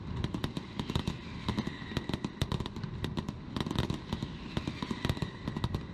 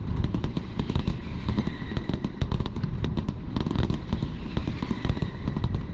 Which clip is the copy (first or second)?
second